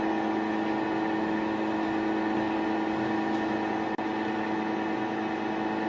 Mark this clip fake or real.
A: real